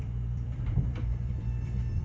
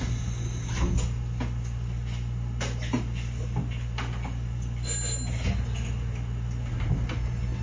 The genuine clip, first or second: second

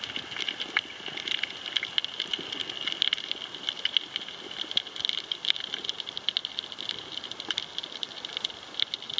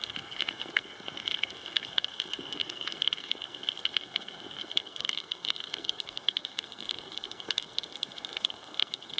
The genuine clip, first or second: first